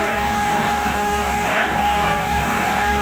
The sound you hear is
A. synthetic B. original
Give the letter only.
A